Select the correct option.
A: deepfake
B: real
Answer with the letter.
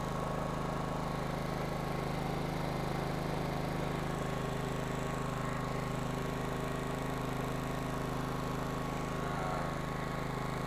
B